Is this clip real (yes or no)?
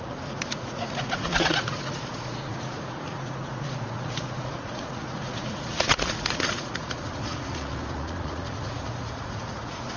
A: no